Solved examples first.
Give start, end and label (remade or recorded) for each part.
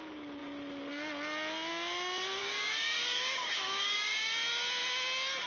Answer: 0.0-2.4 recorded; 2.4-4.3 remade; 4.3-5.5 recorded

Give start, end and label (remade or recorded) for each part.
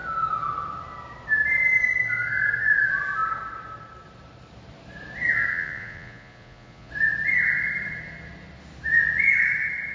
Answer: 0.0-5.5 recorded; 5.5-6.9 remade; 6.9-9.9 recorded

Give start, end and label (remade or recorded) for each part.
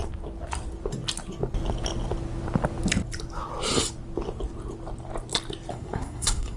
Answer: 0.0-5.7 recorded; 5.7-6.6 remade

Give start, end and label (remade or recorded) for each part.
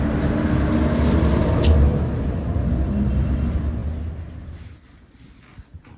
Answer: 0.0-6.0 recorded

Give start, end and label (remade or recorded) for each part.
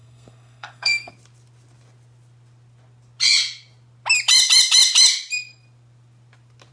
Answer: 0.0-1.1 remade; 1.1-6.7 recorded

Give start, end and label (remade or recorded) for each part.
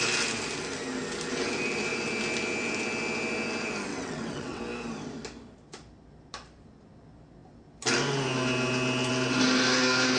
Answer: 0.0-3.9 recorded; 3.9-4.6 remade; 4.6-10.2 recorded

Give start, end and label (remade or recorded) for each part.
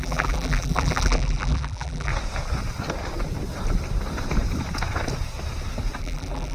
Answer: 0.0-2.1 remade; 2.1-6.0 recorded; 6.0-6.5 remade